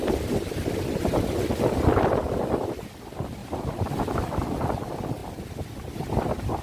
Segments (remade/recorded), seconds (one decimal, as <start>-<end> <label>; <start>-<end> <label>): 0.0-3.4 recorded; 3.4-4.0 remade; 4.0-6.6 recorded